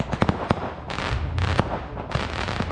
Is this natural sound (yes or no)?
no